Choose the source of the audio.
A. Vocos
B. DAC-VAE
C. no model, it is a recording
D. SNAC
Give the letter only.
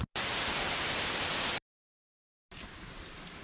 C